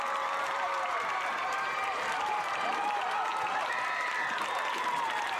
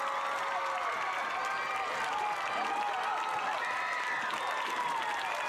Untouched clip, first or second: second